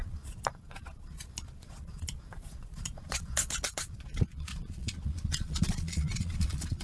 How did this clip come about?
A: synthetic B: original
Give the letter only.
A